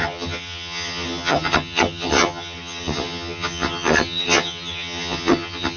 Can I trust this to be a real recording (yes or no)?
no